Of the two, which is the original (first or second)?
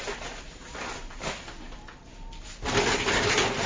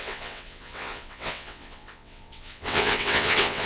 first